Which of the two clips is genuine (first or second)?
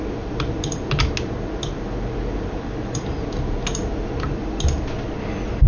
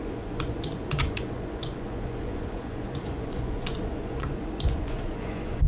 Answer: first